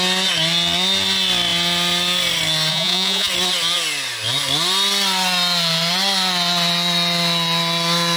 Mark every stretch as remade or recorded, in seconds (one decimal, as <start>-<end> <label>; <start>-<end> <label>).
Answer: 0.0-2.7 recorded; 2.7-3.3 remade; 3.3-8.2 recorded